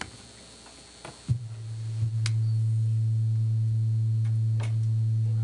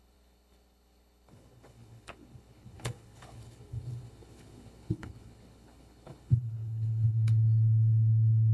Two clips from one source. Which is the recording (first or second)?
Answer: first